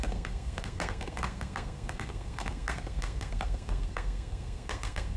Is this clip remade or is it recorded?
remade